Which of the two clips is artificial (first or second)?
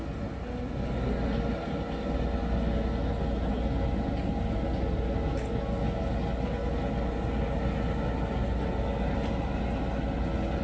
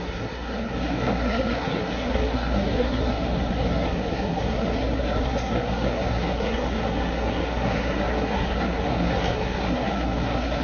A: second